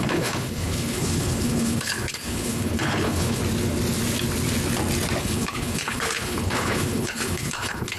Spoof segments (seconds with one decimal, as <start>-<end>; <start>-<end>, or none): 0.0-3.4; 5.2-8.0

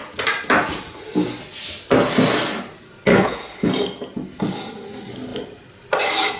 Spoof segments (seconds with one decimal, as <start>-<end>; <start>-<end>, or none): 3.1-3.7

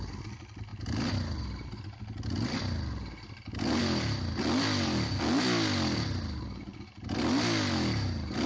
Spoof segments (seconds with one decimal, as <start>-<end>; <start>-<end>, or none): none

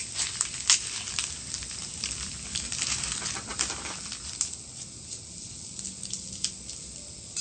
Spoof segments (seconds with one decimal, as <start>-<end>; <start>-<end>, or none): none